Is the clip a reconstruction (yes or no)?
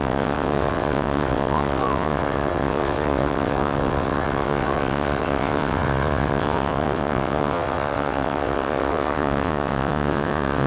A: yes